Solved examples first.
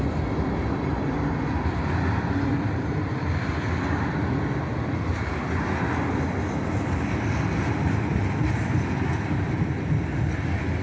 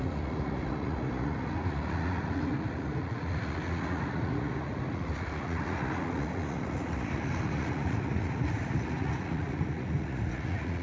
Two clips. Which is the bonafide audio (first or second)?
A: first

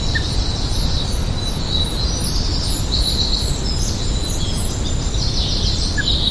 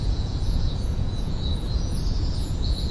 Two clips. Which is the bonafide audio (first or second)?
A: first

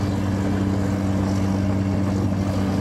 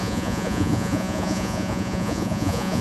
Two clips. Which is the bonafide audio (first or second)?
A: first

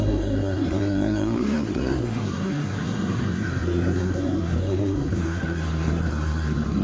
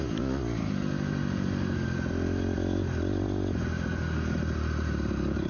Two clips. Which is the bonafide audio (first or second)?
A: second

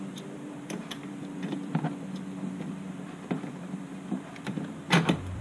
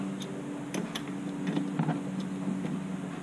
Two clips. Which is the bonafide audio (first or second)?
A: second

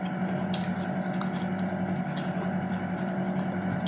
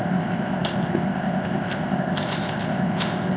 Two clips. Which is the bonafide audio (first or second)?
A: first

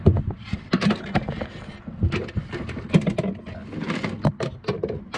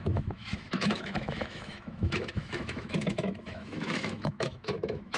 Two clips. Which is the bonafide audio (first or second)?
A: first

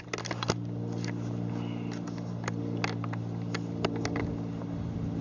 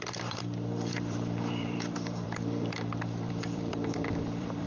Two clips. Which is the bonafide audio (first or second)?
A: first